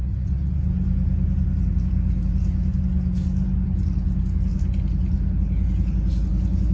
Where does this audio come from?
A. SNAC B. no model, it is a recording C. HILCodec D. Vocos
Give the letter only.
B